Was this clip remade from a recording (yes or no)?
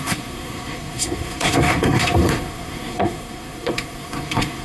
yes